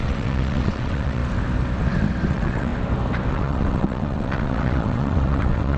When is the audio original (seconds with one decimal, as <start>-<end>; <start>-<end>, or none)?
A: 1.2-2.3; 2.7-3.3